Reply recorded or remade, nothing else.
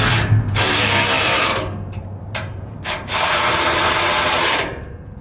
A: remade